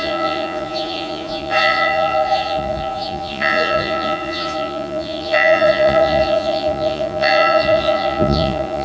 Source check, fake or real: fake